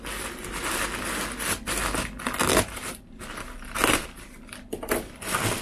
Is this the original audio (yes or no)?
yes